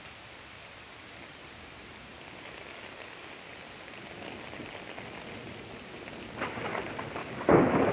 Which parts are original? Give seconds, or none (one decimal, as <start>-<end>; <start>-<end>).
0.0-7.2